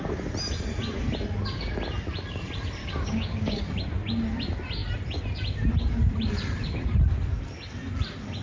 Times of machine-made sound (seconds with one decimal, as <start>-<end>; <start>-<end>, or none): 2.8-3.6